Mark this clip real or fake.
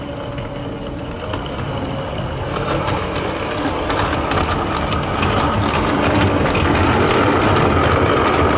real